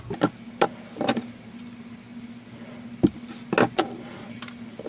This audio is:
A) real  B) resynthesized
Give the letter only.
A